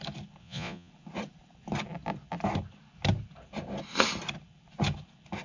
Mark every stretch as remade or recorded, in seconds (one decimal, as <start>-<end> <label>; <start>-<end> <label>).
0.0-0.4 recorded; 0.4-0.9 remade; 0.9-5.4 recorded